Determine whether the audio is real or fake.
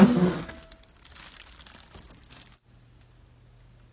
real